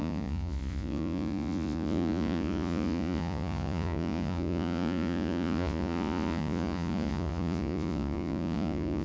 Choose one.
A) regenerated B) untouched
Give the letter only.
A